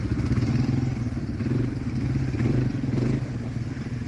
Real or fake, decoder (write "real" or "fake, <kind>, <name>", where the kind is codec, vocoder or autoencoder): real